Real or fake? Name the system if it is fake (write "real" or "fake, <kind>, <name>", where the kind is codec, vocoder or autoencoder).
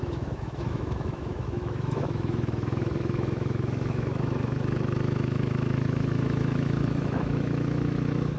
fake, autoencoder, DAC-VAE